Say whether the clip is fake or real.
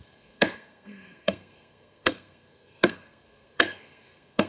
fake